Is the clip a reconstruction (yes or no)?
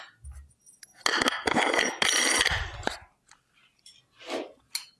no